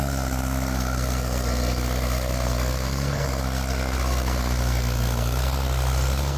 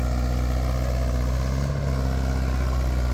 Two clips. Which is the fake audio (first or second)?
first